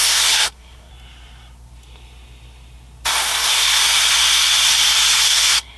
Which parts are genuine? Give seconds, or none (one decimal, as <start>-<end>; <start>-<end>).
0.9-3.2; 3.8-5.3